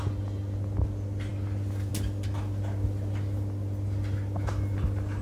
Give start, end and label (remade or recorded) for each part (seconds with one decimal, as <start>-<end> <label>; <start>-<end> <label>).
0.0-5.2 recorded